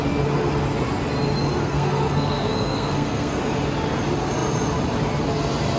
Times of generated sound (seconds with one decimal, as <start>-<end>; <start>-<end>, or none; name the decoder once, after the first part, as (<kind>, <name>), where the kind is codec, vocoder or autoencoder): 1.6-3.4 (codec, SNAC)